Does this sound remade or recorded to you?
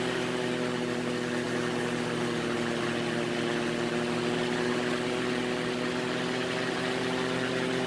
recorded